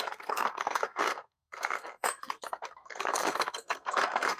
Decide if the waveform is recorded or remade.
remade